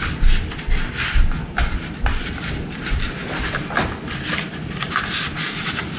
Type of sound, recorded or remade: recorded